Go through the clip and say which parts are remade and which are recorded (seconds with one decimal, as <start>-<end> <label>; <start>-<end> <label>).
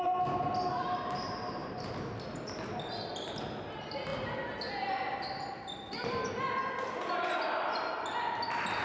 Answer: 0.0-8.8 recorded